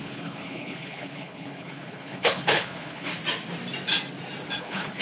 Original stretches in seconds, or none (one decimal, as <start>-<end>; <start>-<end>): 3.1-4.6